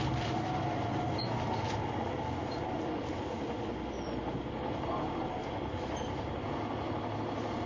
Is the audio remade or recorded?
recorded